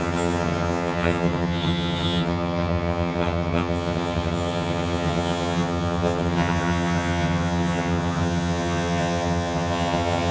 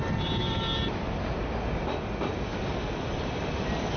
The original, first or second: second